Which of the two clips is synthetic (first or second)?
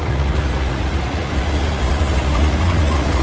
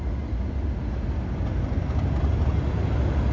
first